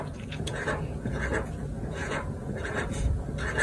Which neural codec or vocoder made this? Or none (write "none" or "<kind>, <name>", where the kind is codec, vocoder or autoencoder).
vocoder, Vocos